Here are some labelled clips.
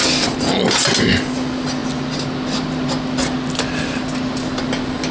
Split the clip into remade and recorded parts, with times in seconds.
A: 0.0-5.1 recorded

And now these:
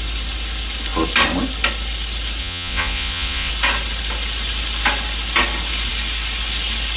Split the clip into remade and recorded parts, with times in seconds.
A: 0.0-2.4 recorded; 2.4-3.5 remade; 3.5-7.0 recorded

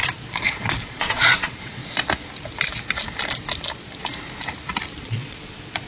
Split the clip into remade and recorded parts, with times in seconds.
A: 0.0-1.8 remade; 1.8-5.0 recorded; 5.0-5.9 remade